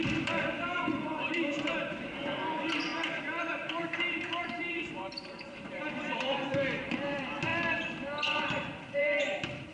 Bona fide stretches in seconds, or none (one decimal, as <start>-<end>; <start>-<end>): 7.5-8.9